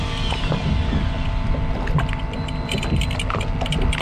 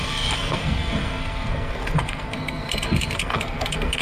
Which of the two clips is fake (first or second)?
second